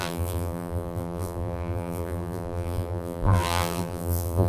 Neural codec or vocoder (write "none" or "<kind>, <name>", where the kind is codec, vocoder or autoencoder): vocoder, BigVGAN v2